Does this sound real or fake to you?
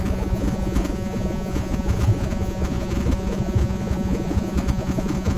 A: fake